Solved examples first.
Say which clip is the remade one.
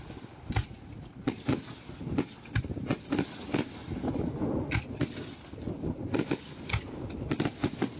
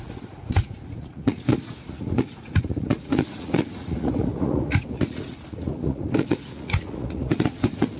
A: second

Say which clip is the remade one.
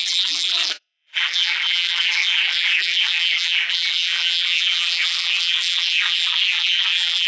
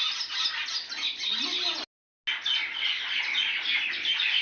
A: first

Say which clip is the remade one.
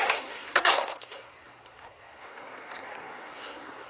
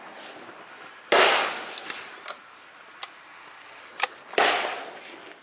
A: first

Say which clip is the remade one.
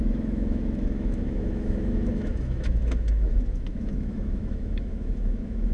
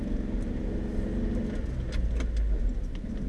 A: first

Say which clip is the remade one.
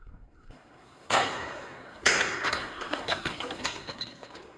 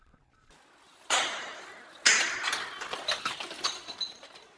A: first